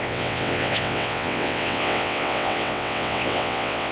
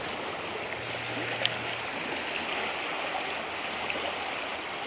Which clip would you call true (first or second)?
second